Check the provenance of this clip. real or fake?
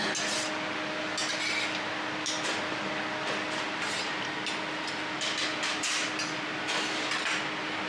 real